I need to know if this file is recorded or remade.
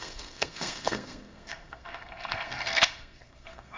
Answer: remade